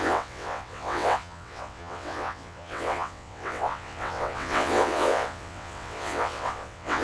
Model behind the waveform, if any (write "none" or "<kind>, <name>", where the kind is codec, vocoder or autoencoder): vocoder, WaveNeXt